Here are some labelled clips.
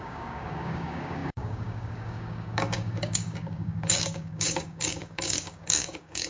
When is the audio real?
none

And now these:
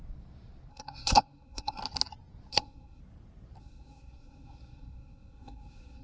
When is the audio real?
0.0-0.7; 1.8-2.5; 3.0-3.6

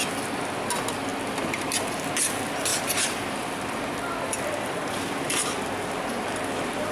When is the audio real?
0.0-6.9

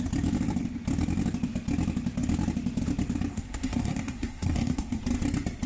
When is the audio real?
0.0-3.3; 5.0-5.7